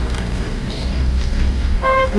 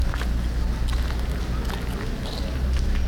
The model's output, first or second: first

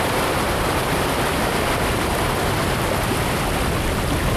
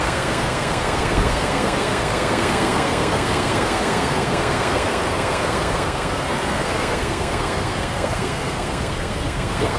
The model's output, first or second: second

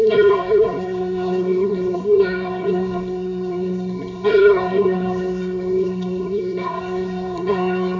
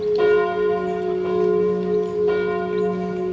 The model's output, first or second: first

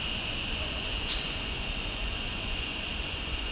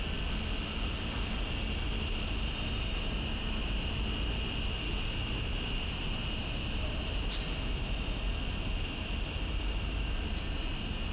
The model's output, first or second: first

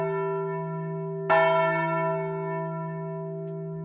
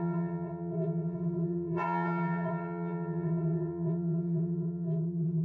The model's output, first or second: second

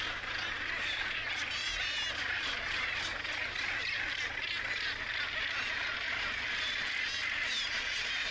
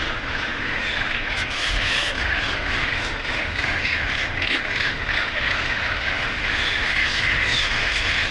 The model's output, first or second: second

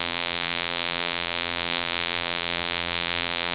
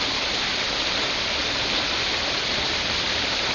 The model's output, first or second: first